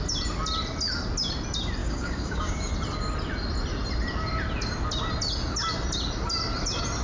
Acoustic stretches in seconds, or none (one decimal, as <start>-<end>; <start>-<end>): 0.0-1.8; 2.7-7.0